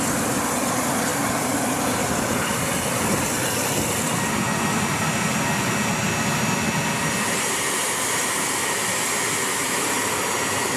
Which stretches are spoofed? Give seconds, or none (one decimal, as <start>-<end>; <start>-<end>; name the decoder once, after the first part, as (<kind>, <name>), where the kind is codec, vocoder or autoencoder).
1.1-2.0 (vocoder, BigVGAN v2); 2.5-5.7